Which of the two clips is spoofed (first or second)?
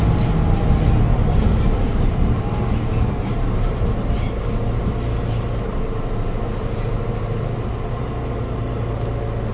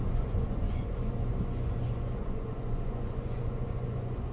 second